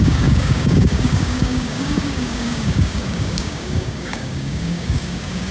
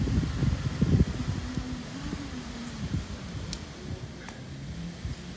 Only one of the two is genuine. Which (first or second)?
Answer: second